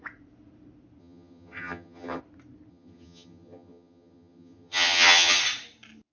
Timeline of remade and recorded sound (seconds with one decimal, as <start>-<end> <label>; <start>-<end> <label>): 0.0-1.0 recorded; 1.0-2.2 remade; 2.2-2.7 recorded; 2.7-5.4 remade; 5.4-6.1 recorded